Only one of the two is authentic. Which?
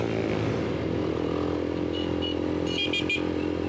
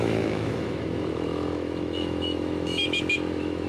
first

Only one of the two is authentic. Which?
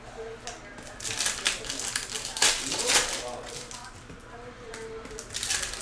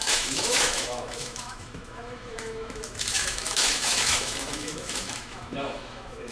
first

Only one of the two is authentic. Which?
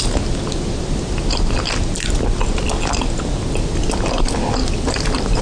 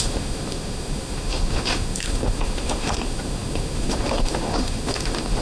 first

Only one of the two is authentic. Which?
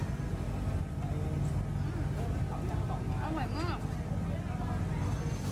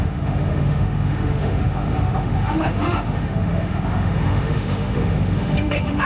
first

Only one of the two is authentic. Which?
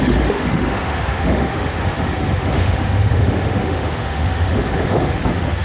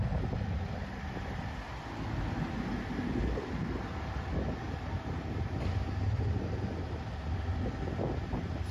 second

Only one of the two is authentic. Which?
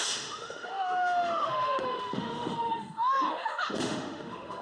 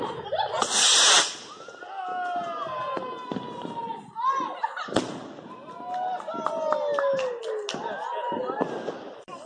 second